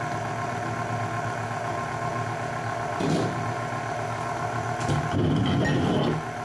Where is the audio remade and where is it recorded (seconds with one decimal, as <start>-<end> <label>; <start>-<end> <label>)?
0.0-6.4 recorded

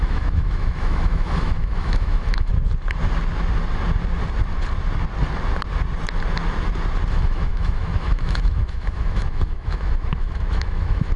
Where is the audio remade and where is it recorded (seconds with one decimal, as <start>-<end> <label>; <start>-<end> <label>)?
0.0-2.5 remade; 2.5-7.1 recorded; 7.1-11.2 remade

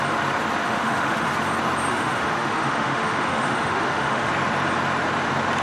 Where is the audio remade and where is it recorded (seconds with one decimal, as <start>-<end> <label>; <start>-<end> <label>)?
0.0-0.6 recorded; 0.6-1.3 remade; 1.3-1.9 recorded; 1.9-4.3 remade; 4.3-5.6 recorded